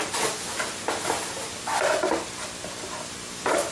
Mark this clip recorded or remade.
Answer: recorded